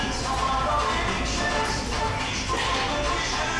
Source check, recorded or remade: recorded